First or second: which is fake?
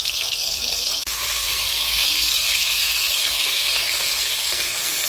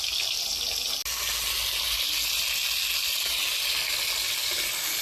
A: first